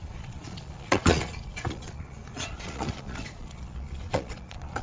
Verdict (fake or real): fake